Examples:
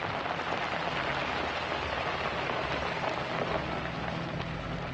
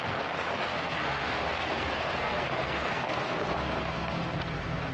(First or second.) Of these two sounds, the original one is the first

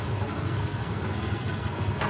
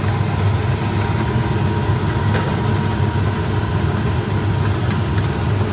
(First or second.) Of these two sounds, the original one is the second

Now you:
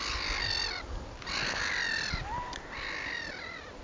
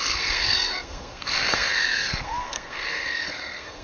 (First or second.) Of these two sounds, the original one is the first